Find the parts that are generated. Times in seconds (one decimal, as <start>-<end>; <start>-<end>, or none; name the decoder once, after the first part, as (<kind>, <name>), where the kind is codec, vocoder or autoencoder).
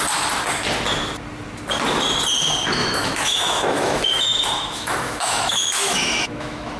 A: 2.8-6.8 (autoencoder, DAC-VAE)